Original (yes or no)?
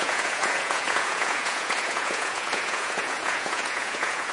no